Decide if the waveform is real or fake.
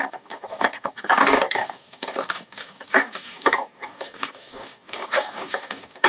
fake